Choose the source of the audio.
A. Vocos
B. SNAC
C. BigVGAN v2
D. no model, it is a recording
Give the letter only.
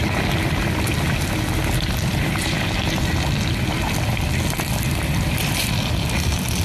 D